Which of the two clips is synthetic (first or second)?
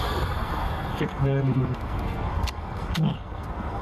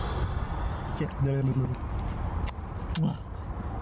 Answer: first